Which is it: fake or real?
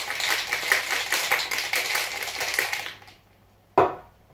real